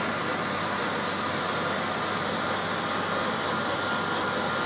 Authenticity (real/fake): real